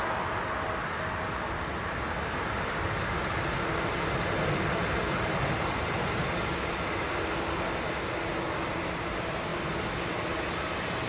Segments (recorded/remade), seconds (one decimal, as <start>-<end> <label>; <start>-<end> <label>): 0.0-11.1 recorded